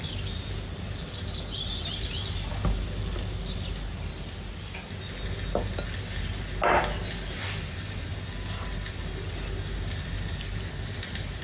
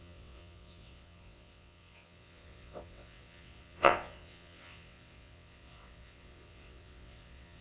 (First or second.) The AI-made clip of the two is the second